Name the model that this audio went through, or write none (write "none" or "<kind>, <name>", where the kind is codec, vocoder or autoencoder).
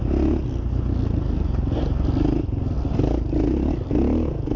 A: none